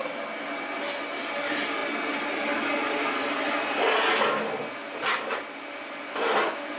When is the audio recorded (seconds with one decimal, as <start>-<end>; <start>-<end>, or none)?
0.0-6.8